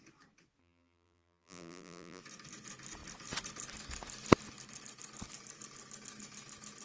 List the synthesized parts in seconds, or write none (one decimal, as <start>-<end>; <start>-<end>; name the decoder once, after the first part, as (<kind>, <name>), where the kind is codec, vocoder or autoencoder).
0.6-2.2 (vocoder, BigVGAN v2)